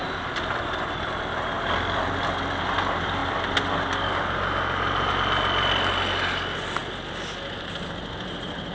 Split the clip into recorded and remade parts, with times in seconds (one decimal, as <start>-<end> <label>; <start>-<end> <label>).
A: 0.0-8.7 recorded